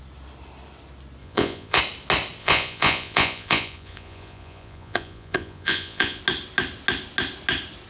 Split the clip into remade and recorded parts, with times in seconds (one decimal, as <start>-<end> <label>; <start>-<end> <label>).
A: 0.0-1.2 recorded; 1.2-1.8 remade; 1.8-2.4 recorded; 2.4-6.2 remade; 6.2-7.9 recorded